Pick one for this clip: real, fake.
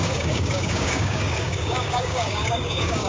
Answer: fake